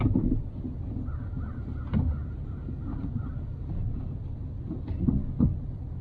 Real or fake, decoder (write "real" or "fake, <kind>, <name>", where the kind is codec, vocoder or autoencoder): real